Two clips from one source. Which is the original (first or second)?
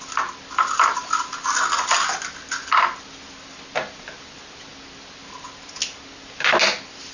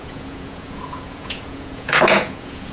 first